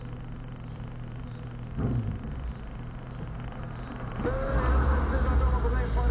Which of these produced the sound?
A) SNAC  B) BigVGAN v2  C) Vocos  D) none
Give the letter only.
D